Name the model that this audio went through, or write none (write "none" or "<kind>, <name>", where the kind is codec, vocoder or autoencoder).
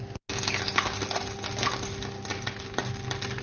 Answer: none